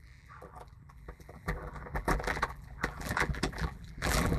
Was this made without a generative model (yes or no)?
no